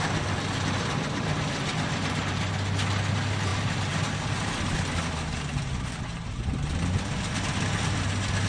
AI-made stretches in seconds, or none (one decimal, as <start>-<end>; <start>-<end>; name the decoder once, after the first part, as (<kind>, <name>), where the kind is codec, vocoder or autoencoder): 3.5-4.5 (vocoder, BigVGAN v2); 6.1-6.6